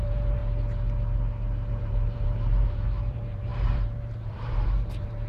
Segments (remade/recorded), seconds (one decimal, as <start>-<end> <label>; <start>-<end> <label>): 0.0-0.4 remade; 0.4-1.7 recorded; 1.7-5.3 remade